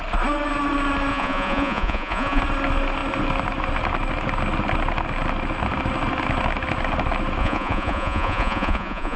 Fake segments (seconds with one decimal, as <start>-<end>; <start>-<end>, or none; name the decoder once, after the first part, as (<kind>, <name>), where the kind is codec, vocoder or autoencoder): 1.1-2.4 (vocoder, Vocos); 7.4-9.2